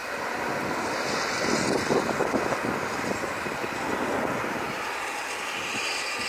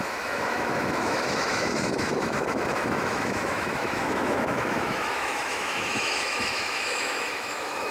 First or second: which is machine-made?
second